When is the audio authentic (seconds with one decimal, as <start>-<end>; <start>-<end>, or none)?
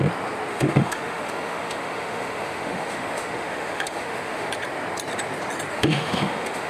0.0-0.5; 4.5-5.7